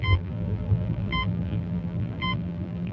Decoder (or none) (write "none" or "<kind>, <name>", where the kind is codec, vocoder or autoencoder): vocoder, BigVGAN v2